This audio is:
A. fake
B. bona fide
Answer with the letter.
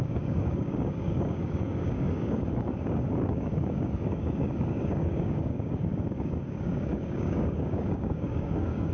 A